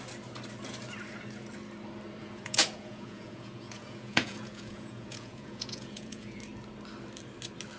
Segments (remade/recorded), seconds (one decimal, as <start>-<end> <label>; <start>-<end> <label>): 0.0-2.2 recorded; 2.2-6.4 remade; 6.4-7.8 recorded